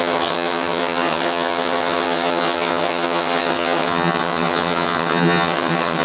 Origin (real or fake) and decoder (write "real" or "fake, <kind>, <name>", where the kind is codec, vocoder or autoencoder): fake, vocoder, HiFi-GAN